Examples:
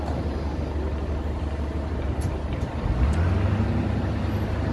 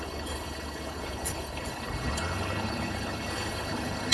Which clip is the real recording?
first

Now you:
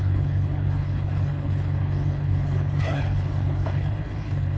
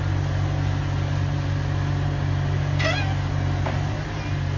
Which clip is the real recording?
second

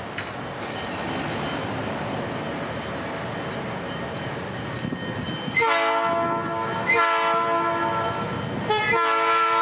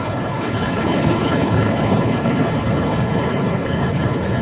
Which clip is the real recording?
first